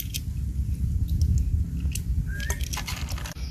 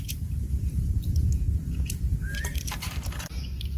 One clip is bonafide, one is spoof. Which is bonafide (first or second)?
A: first